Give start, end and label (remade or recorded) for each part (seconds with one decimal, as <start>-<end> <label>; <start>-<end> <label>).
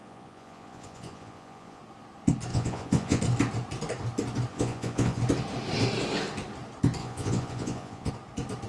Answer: 0.0-1.8 remade; 1.8-2.5 recorded; 2.5-3.2 remade; 3.2-4.5 recorded; 4.5-5.2 remade; 5.2-7.0 recorded; 7.0-8.1 remade; 8.1-8.7 recorded